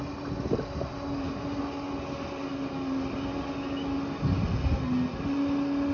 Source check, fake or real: real